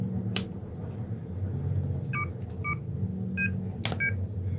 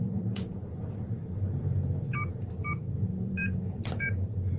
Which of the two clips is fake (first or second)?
second